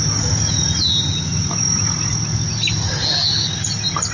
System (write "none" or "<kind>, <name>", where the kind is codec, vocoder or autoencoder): none